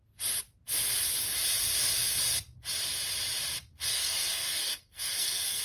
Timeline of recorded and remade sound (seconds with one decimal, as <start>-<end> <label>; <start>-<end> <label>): 0.0-3.9 recorded; 3.9-5.6 remade